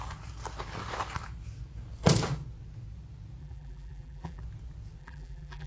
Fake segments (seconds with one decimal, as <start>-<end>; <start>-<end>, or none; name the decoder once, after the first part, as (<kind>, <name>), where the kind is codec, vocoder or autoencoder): 3.4-4.4 (vocoder, BigVGAN v2); 5.0-5.7